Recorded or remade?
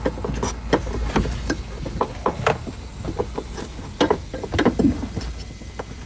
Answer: recorded